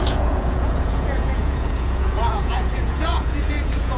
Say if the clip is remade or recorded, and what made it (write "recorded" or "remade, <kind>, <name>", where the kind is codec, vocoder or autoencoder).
remade, vocoder, Vocos